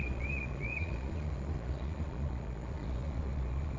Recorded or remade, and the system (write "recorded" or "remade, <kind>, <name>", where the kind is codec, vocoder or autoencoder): remade, vocoder, Vocos